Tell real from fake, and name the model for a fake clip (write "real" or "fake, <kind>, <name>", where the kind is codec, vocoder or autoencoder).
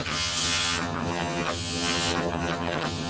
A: fake, vocoder, HiFi-GAN